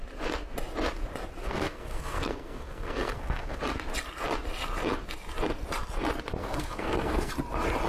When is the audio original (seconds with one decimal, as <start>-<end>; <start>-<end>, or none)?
0.0-1.4; 3.6-6.4; 7.3-7.9

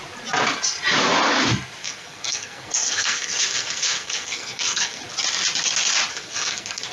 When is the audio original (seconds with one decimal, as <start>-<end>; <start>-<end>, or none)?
0.0-1.8; 5.0-6.1

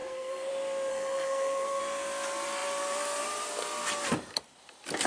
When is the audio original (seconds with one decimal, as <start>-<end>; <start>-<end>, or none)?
0.5-0.9; 1.8-5.1

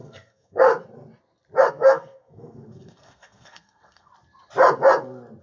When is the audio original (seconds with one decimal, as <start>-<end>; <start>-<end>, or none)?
0.7-1.7; 4.1-5.4